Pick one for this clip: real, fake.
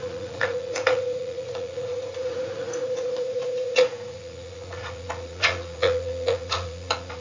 fake